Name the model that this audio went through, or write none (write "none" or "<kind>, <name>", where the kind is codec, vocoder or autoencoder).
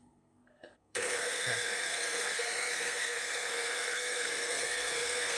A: codec, SNAC